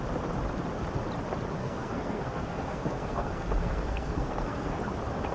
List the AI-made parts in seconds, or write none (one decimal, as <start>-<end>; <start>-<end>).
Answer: 1.6-4.8

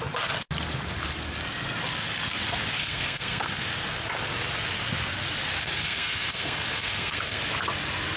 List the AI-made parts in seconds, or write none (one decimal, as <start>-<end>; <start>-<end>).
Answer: 2.8-3.6; 5.6-7.4

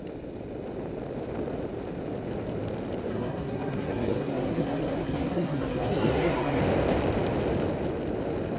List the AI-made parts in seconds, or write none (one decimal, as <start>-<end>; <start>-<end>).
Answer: 3.1-6.6

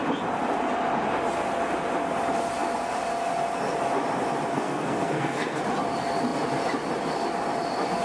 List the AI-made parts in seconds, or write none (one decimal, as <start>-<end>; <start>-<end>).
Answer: 4.5-5.6

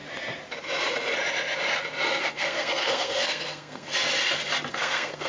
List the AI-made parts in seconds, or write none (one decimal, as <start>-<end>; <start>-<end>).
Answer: 2.2-3.9; 4.7-5.3

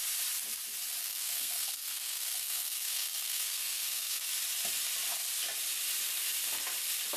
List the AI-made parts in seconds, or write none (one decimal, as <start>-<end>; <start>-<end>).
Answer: 1.0-4.3

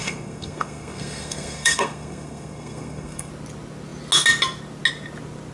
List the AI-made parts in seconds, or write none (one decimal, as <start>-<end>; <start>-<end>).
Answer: 0.0-3.3

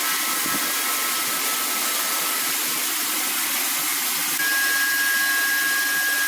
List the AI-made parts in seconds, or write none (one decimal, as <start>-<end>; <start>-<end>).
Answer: none